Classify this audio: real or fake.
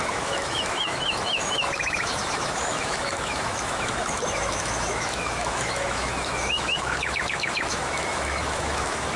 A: fake